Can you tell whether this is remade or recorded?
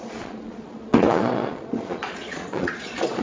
remade